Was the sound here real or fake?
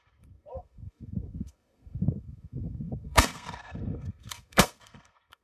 fake